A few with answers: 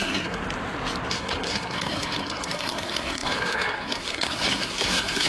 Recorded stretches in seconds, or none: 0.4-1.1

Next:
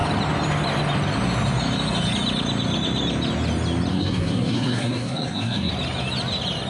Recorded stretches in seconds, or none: 0.0-3.9; 5.7-6.7

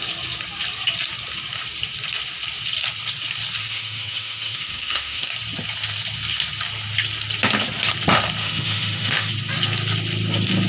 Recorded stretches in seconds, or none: 0.0-3.6; 5.3-8.4; 9.3-10.7

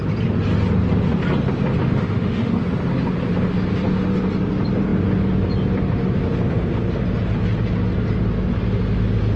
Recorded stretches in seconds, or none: 0.0-1.8; 2.6-9.4

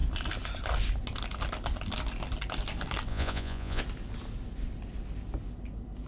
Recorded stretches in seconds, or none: 0.0-3.1; 3.8-6.1